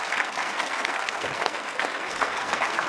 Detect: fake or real fake